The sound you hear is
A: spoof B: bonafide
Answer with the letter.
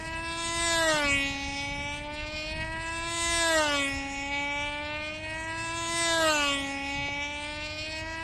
B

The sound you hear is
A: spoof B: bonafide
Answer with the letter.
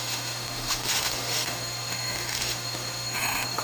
A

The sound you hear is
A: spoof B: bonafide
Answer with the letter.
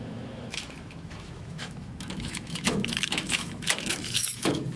A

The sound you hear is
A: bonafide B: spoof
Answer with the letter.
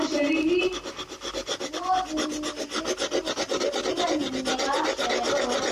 A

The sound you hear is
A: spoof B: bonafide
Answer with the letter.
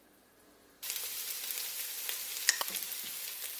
B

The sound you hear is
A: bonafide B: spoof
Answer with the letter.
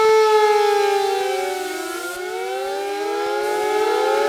A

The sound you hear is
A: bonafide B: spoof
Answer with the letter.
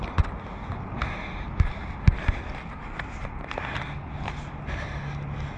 A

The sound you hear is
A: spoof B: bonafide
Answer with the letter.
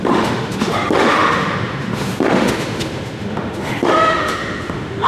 A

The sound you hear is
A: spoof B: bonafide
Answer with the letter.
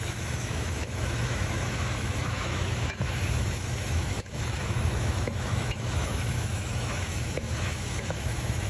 A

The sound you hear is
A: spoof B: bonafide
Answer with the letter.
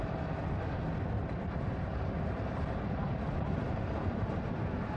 B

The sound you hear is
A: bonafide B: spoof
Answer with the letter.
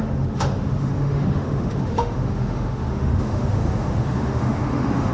B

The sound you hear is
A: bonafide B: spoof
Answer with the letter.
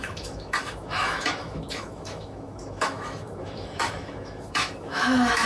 B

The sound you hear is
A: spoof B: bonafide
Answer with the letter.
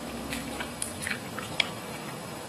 A